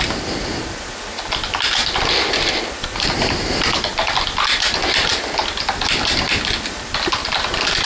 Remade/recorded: recorded